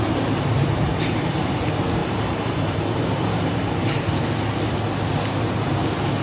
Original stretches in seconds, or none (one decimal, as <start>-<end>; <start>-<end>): 0.0-0.9; 1.5-2.0; 4.1-6.2